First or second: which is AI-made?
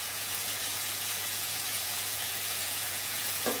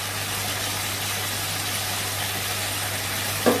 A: first